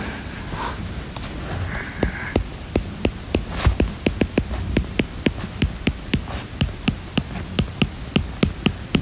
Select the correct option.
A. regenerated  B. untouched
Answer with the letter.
B